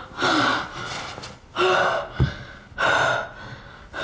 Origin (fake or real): real